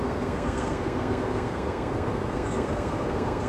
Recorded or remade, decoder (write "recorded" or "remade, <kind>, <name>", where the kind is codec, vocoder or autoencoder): remade, codec, SNAC